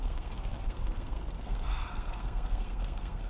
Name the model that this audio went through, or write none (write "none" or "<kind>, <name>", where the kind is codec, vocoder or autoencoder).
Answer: codec, SNAC